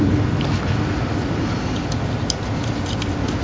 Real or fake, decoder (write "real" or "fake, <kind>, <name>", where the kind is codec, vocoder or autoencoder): real